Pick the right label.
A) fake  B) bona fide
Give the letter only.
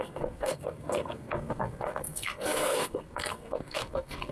A